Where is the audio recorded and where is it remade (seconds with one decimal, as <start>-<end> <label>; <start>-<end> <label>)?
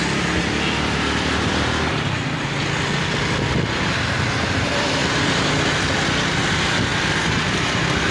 0.0-8.1 recorded